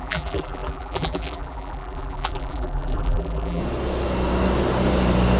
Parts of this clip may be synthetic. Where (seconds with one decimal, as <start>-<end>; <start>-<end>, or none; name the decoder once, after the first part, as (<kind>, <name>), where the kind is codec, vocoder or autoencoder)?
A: 0.0-3.6 (vocoder, BigVGAN v2)